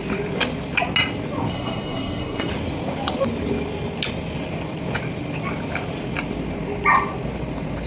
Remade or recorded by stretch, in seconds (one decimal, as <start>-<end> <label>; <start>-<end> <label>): 0.0-1.5 recorded; 1.5-2.5 remade; 2.5-7.9 recorded